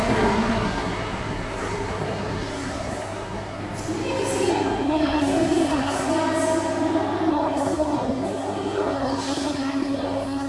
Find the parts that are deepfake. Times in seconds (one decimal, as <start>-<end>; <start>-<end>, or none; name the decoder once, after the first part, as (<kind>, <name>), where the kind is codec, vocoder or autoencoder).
0.0-3.6 (codec, SNAC); 4.5-6.1; 7.3-10.5